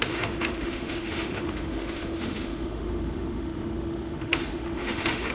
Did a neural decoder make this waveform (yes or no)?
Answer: yes